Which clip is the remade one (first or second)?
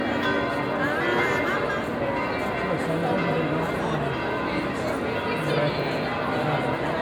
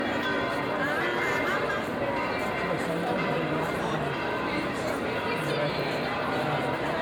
second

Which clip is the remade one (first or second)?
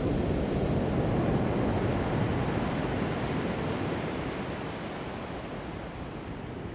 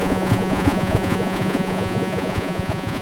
second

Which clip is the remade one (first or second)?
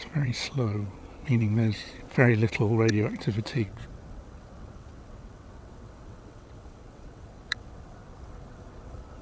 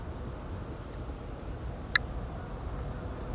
first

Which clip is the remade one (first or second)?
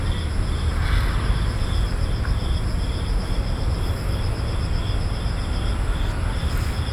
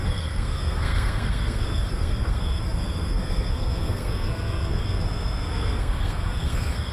second